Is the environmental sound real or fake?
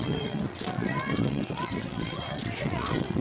fake